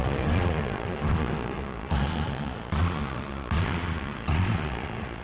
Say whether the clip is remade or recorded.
remade